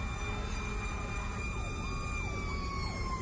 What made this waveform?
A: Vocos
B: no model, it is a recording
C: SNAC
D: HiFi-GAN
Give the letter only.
B